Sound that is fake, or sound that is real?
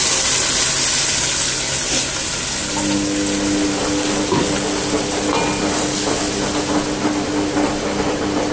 real